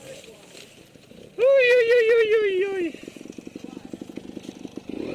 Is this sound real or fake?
real